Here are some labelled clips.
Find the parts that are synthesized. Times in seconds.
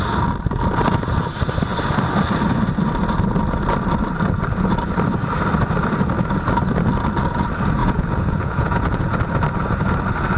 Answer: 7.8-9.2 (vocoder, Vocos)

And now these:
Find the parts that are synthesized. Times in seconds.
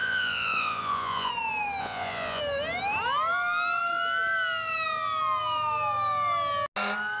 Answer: 0.0-1.3 (vocoder, Vocos); 1.8-2.4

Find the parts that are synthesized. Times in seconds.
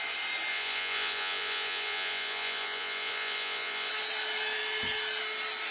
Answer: 0.5-3.9 (vocoder, Vocos)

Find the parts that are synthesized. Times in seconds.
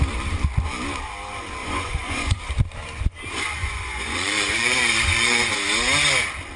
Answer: 1.6-2.3 (vocoder, Vocos); 3.6-5.5